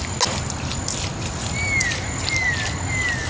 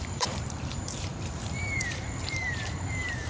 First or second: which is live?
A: first